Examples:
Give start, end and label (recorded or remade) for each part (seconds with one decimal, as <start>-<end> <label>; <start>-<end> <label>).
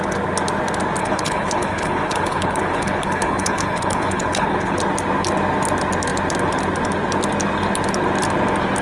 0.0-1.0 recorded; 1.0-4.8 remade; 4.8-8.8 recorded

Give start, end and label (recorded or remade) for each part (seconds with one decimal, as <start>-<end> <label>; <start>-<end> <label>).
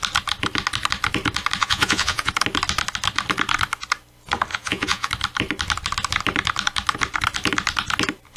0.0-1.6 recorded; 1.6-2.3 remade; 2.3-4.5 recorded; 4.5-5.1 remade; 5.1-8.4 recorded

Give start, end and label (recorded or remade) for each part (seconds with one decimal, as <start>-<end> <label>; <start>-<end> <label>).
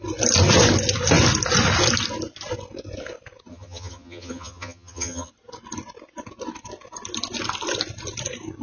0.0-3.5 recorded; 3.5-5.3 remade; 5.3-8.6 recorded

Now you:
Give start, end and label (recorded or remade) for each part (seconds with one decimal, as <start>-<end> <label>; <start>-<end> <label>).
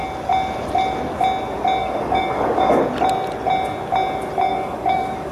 0.0-1.8 recorded; 1.8-2.8 remade; 2.8-4.5 recorded; 4.5-5.3 remade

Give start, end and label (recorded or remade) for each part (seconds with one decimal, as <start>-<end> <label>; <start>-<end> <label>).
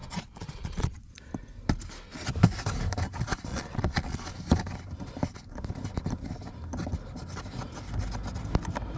0.0-1.3 remade; 1.3-3.5 recorded; 3.5-4.2 remade; 4.2-9.0 recorded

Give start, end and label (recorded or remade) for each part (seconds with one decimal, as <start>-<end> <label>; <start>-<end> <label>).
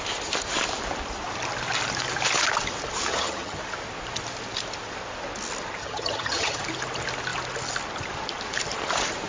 0.0-3.1 recorded; 3.1-3.6 remade; 3.6-5.8 recorded; 5.8-6.6 remade; 6.6-9.3 recorded